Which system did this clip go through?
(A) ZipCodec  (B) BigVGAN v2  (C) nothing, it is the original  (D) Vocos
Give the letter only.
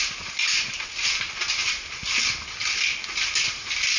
C